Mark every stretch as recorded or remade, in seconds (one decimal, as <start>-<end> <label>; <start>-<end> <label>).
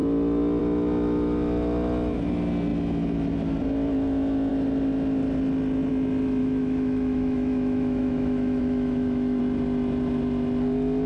0.0-6.4 recorded; 6.4-9.4 remade; 9.4-11.1 recorded